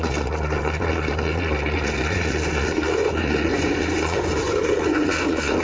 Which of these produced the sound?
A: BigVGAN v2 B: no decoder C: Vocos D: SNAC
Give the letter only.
C